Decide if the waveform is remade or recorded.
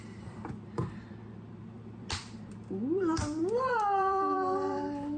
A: remade